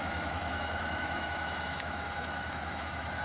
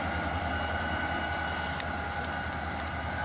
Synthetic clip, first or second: first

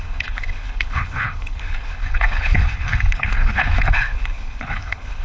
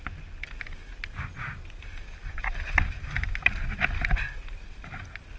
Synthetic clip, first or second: first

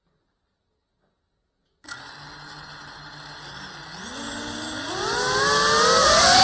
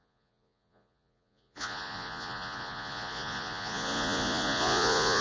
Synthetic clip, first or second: second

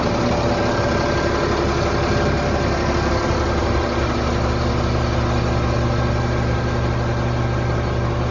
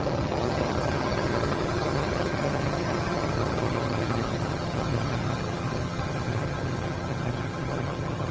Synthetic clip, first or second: second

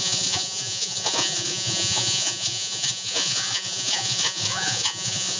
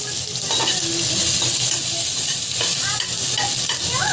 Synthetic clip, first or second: first